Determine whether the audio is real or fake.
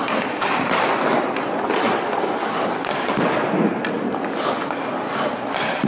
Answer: real